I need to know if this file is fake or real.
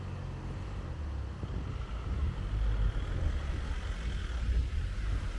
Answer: real